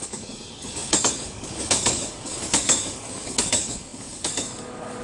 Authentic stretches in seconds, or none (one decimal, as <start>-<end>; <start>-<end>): none